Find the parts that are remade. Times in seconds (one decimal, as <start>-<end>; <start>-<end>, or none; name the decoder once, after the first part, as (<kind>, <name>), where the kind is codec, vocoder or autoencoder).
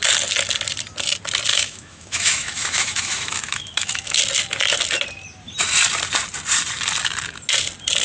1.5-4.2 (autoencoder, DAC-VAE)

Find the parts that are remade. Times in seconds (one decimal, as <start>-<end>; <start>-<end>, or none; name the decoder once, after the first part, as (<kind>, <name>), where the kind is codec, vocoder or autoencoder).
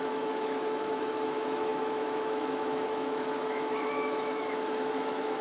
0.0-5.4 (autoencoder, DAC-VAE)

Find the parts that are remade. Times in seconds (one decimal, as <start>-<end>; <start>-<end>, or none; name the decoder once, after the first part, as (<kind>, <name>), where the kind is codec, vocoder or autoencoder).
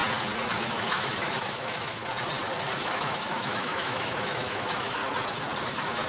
0.6-2.0 (autoencoder, DAC-VAE); 2.8-5.0; 5.6-6.1